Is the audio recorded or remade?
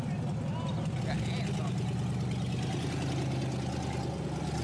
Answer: recorded